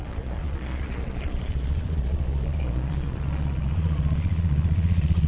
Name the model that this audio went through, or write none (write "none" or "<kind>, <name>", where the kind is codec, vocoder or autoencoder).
vocoder, Vocos